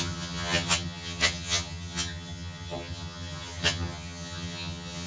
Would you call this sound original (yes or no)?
no